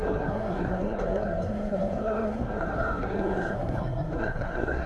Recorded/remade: remade